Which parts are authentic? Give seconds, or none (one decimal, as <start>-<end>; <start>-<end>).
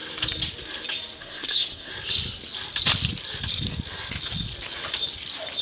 0.0-1.2; 1.9-5.6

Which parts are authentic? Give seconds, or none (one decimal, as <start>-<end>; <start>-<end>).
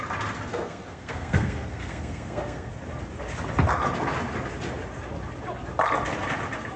0.0-0.5; 2.7-6.8